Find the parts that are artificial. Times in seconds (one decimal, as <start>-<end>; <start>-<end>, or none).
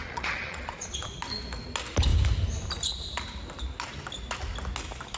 0.0-1.1